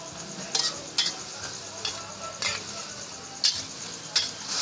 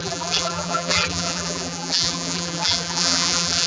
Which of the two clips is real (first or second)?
first